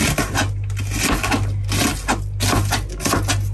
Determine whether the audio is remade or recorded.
recorded